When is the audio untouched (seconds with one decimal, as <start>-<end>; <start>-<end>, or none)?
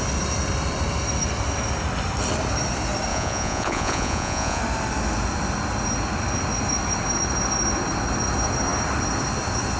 0.0-3.1; 4.6-9.8